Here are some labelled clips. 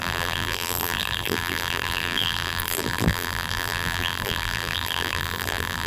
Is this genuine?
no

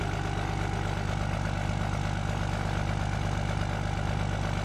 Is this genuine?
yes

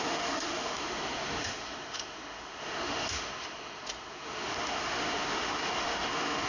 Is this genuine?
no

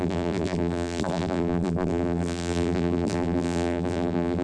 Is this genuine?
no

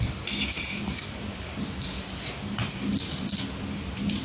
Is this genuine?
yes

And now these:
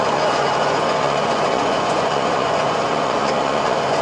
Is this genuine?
no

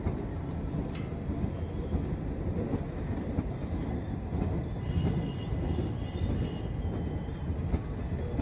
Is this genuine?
yes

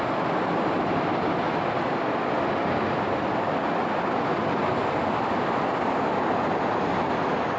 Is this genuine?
yes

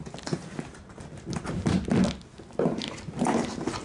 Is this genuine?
yes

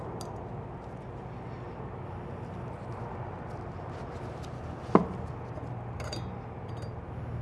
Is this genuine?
yes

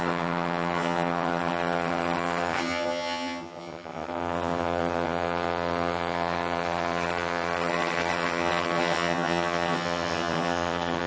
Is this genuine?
no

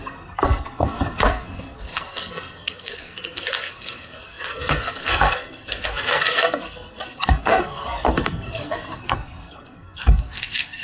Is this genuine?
no